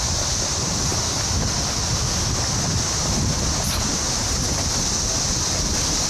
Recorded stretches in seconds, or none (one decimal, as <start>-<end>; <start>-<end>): 0.0-6.1